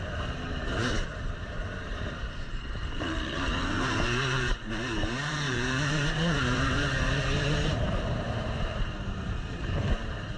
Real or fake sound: fake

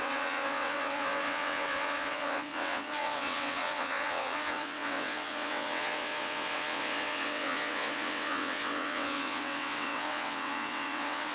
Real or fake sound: fake